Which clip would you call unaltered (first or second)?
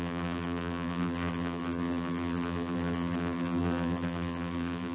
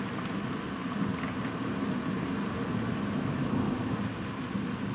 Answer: second